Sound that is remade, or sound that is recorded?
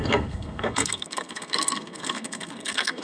remade